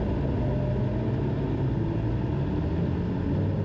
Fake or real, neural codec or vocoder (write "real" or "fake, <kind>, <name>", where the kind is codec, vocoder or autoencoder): real